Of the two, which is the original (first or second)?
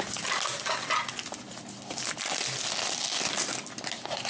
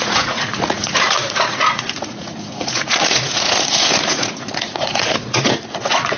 first